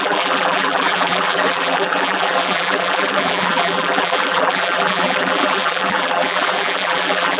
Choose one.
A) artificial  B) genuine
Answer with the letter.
A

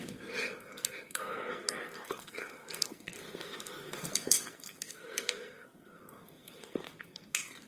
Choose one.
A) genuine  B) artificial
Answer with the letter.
B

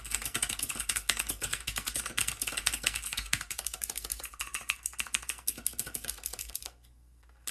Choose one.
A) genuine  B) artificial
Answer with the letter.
B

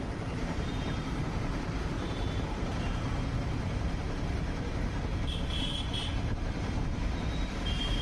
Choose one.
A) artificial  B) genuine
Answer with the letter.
A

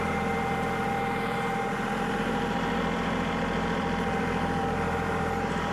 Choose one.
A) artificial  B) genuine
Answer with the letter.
A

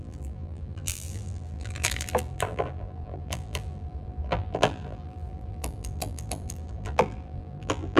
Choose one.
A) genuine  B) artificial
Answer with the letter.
B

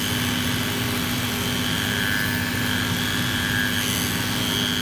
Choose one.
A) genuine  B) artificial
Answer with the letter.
A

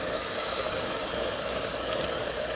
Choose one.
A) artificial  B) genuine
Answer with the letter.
A